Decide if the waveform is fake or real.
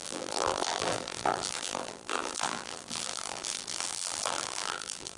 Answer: fake